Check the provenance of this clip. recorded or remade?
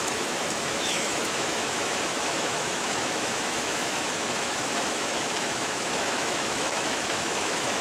remade